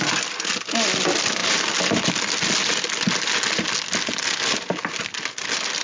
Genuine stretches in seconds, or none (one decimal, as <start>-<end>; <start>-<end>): 0.0-5.8